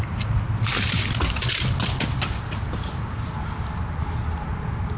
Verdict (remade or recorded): recorded